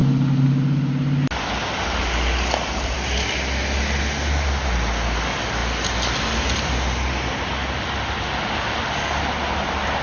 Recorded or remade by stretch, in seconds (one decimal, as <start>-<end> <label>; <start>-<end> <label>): 0.0-10.0 recorded